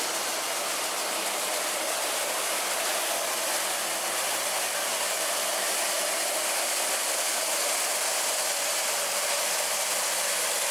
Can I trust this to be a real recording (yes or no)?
yes